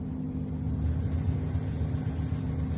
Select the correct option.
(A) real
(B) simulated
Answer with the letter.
A